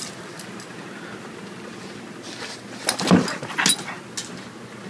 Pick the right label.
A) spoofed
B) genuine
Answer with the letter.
B